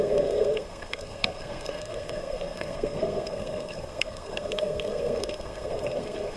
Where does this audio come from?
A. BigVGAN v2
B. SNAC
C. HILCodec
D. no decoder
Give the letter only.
B